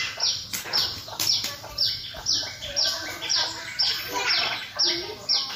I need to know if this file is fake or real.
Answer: real